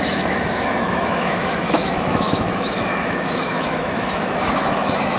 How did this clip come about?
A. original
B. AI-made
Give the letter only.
B